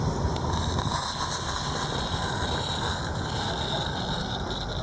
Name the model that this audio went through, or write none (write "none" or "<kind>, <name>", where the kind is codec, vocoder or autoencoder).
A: none